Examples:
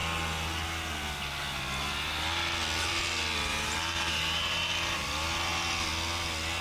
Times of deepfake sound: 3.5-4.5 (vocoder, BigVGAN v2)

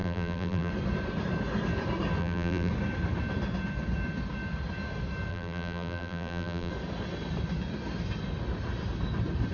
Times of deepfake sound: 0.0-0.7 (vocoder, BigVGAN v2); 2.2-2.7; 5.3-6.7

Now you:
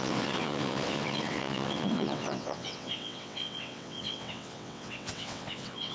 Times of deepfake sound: 0.0-5.9 (vocoder, WaveNeXt)

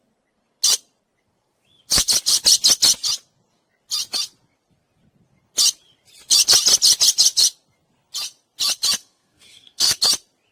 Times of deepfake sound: 9.0-10.0 (codec, SNAC)

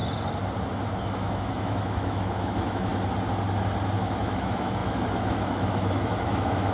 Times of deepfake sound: 1.0-2.9 (autoencoder, DAC-VAE); 4.0-6.7

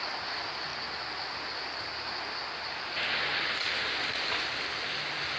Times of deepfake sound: none

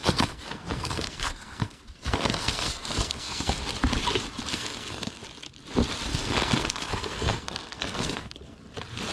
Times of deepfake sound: 0.0-3.6 (codec, SNAC); 4.5-5.2; 6.1-8.6

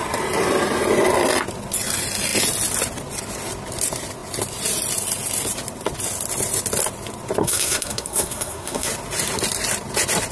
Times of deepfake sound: 7.4-8.9 (codec, SNAC)